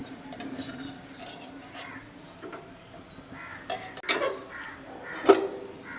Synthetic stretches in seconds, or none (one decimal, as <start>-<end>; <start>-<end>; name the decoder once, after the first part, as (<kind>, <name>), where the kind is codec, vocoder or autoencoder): 0.0-2.5 (vocoder, BigVGAN v2)